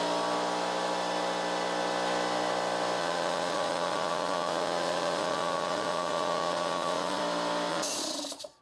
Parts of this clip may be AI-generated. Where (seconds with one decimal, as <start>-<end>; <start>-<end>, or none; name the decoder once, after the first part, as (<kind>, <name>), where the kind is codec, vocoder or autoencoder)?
3.0-7.2 (vocoder, Vocos); 7.7-8.6